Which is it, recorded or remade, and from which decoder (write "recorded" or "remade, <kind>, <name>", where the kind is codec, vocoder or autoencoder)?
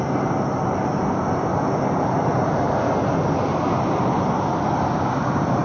recorded